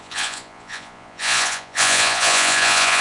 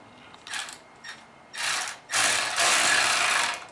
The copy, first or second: first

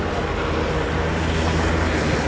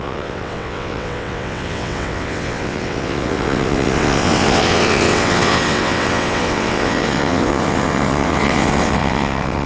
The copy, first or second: second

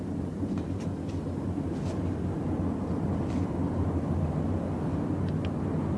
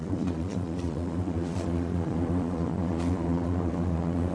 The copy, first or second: second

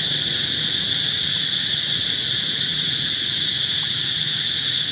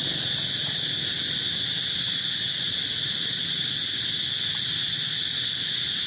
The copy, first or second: first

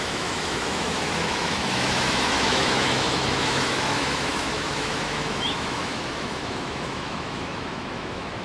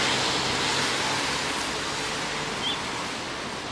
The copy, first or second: first